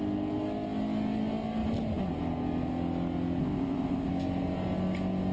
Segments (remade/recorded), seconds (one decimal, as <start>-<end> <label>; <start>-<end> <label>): 0.0-3.4 recorded; 3.4-4.1 remade; 4.1-5.3 recorded